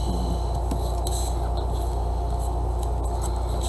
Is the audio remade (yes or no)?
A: no